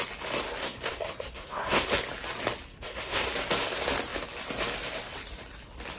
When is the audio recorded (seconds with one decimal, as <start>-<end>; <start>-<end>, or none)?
0.0-0.6; 1.9-2.7; 3.3-6.0